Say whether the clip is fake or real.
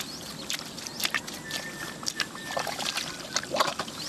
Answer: real